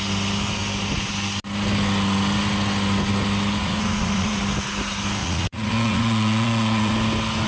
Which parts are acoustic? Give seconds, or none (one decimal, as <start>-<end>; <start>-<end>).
0.0-3.6; 4.4-5.2; 6.9-7.5